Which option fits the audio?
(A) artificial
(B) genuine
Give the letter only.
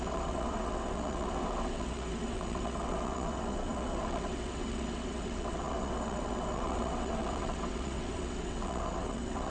A